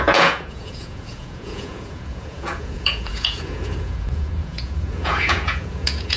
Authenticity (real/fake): fake